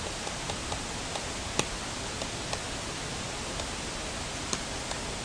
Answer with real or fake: real